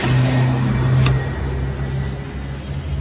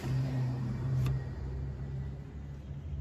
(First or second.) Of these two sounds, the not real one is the second